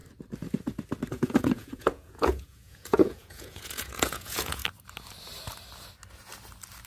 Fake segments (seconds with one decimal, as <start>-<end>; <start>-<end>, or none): 1.1-4.6